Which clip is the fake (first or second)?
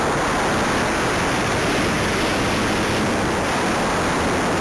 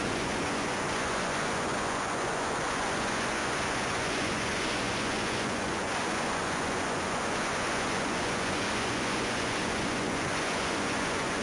second